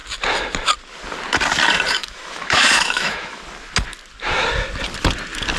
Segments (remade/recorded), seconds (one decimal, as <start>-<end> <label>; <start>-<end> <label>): 0.0-2.0 recorded; 2.0-3.4 remade; 3.4-5.6 recorded